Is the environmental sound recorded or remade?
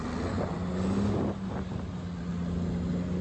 recorded